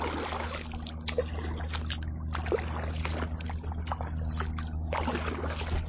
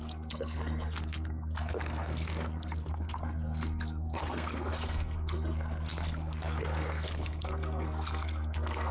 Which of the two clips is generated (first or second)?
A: second